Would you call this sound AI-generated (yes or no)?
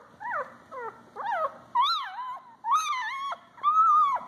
no